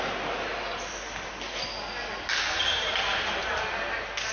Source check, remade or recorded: recorded